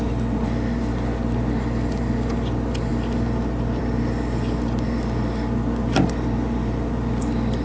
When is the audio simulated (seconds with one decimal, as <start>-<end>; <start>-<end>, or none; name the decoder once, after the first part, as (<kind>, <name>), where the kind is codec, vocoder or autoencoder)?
none